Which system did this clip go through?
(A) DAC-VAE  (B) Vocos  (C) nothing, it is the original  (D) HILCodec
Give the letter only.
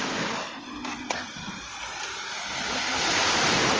C